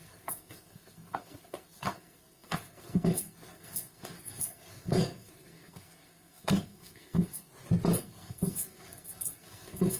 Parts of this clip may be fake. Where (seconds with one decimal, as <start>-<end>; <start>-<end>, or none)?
0.0-7.5; 8.0-10.0